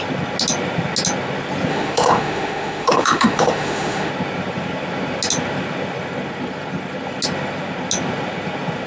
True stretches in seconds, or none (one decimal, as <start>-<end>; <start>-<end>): 0.0-1.7; 4.1-8.9